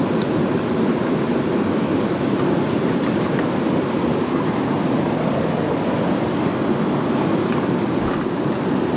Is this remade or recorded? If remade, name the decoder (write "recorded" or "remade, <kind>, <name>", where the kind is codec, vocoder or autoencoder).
recorded